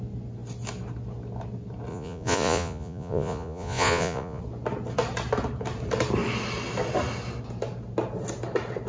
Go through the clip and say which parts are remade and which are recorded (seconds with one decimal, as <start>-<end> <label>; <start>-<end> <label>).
0.0-1.9 recorded; 1.9-4.4 remade; 4.4-8.9 recorded